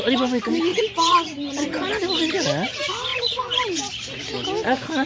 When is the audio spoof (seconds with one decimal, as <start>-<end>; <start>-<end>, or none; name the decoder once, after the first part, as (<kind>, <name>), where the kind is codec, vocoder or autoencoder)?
0.7-1.9 (vocoder, Vocos); 3.1-3.9